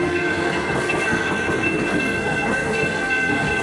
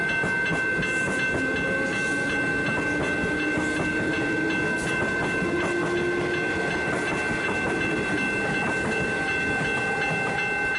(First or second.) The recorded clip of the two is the second